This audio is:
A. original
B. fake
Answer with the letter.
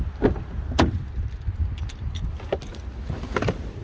A